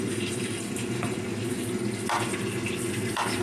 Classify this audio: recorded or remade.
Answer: recorded